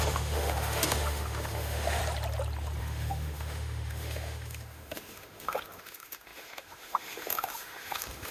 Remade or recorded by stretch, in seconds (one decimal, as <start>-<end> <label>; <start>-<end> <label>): 0.0-2.0 remade; 2.0-2.8 recorded; 2.8-8.3 remade

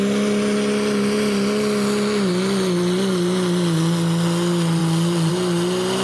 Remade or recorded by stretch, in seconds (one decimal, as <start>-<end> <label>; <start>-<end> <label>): 0.0-6.0 recorded

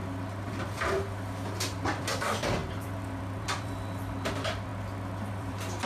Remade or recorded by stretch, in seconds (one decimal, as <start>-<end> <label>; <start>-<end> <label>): 0.0-0.5 recorded; 0.5-4.7 remade; 4.7-5.3 recorded; 5.3-5.9 remade

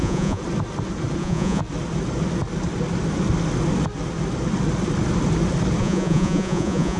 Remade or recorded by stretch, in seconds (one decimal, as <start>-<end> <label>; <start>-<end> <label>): 0.0-0.4 remade; 0.4-1.2 recorded; 1.2-1.6 remade; 1.6-5.8 recorded; 5.8-7.0 remade